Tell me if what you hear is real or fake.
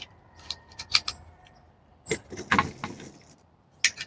real